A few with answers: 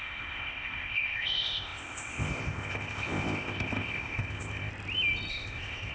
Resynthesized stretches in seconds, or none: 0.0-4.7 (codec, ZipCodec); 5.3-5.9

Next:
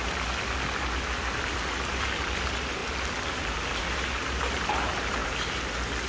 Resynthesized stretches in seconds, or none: none